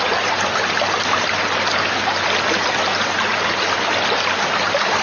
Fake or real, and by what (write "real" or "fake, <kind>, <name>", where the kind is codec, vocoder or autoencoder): real